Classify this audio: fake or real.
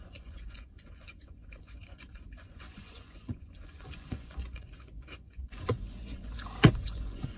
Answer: fake